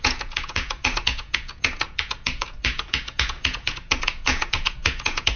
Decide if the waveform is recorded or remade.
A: remade